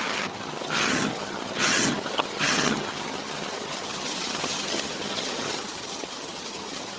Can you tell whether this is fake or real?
fake